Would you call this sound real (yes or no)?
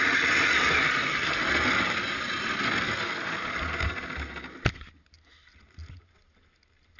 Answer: yes